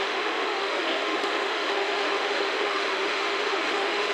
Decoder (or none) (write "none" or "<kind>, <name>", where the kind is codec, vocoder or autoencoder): autoencoder, DAC-VAE